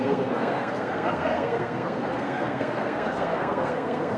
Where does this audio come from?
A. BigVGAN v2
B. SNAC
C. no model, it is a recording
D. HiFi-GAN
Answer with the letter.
B